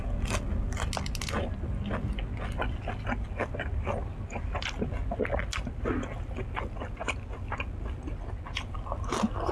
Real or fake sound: real